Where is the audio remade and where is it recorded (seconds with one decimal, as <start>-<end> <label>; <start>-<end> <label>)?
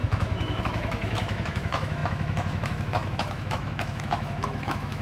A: 0.0-5.0 remade